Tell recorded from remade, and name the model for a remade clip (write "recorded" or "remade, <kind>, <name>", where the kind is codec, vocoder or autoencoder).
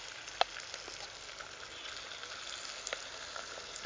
recorded